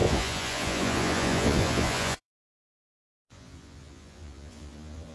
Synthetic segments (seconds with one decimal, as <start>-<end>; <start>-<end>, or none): 0.0-5.1